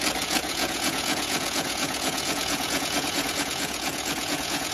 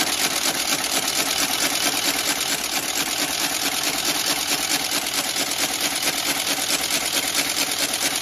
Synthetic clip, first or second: first